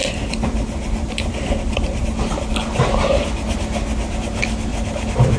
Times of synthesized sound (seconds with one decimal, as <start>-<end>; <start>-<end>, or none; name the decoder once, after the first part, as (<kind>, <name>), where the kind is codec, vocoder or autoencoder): 0.0-2.5 (vocoder, BigVGAN v2); 4.7-5.4